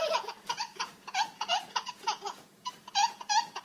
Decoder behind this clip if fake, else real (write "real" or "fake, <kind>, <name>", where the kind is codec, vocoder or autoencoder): fake, vocoder, Vocos